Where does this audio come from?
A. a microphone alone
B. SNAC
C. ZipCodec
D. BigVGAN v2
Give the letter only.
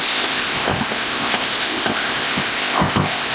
C